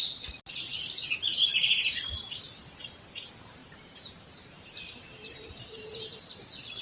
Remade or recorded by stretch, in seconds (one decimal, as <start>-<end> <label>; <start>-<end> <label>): 0.0-1.3 recorded; 1.3-2.1 remade; 2.1-3.6 recorded; 3.6-4.9 remade; 4.9-6.8 recorded